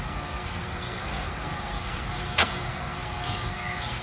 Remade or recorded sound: remade